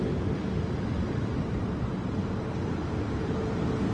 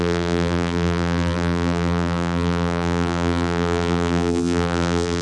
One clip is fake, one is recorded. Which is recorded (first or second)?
first